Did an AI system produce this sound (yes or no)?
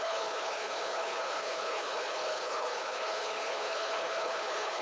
yes